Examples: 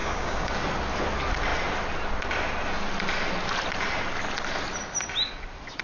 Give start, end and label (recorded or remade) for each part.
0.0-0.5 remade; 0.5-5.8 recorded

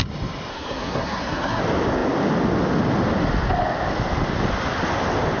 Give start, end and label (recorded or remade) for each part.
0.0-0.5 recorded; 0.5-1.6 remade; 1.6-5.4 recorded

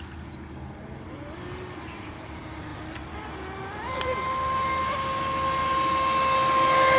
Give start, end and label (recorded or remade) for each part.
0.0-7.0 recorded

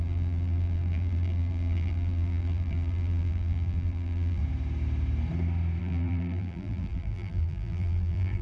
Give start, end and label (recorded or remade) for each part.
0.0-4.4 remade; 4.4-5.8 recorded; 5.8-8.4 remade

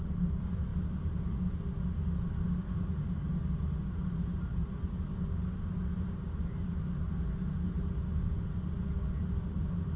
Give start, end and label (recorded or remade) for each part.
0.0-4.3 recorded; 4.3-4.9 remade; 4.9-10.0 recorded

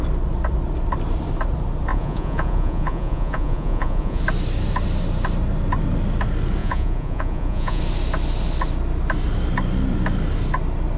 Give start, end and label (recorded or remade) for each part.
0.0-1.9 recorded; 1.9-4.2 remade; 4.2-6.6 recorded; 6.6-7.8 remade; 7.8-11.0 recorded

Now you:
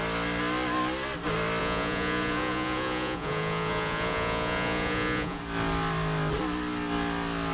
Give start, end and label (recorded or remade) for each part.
0.0-1.6 recorded; 1.6-5.4 remade; 5.4-7.5 recorded

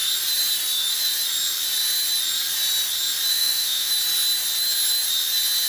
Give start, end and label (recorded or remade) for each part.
0.0-3.3 recorded; 3.3-3.9 remade; 3.9-5.7 recorded